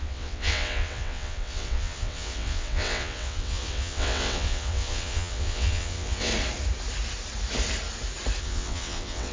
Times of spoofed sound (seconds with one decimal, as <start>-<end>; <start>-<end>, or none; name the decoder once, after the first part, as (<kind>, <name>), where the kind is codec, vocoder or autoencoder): 0.0-6.3 (vocoder, WaveNeXt); 8.4-9.3